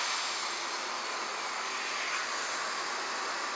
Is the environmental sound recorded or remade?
recorded